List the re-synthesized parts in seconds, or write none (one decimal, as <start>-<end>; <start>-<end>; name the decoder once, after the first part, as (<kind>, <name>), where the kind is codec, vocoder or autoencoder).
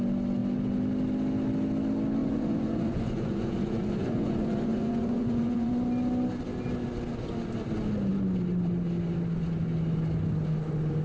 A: 2.2-5.7 (vocoder, Vocos)